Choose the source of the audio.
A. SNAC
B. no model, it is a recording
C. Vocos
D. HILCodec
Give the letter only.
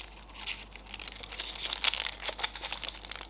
B